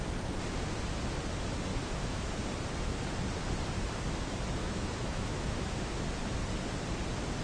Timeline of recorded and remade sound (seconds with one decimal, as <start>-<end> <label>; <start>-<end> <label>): 0.0-1.7 recorded; 1.7-2.4 remade; 2.4-4.6 recorded; 4.6-5.9 remade; 5.9-7.4 recorded